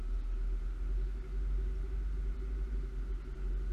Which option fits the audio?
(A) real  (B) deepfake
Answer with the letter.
A